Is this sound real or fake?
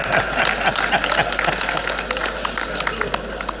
real